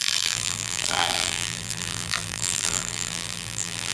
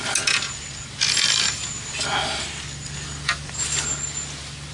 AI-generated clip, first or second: first